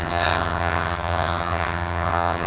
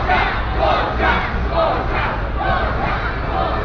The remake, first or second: first